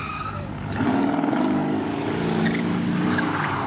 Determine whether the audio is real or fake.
fake